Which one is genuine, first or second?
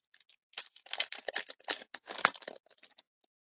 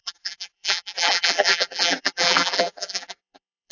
first